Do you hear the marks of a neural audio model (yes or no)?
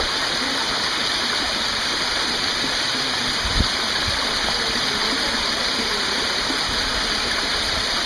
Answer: no